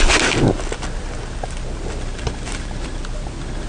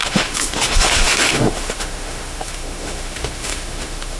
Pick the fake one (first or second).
second